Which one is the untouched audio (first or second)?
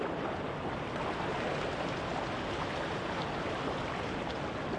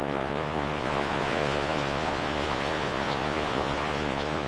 first